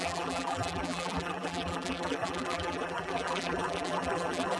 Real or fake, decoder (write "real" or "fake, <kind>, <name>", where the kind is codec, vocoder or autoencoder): fake, vocoder, BigVGAN v2